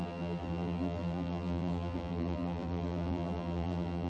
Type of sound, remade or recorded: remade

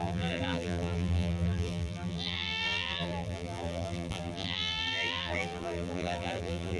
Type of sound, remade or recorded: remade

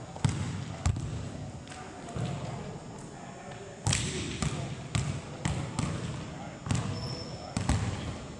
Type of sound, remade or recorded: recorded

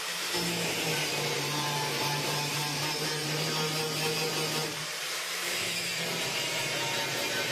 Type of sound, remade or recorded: remade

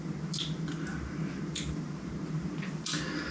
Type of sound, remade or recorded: recorded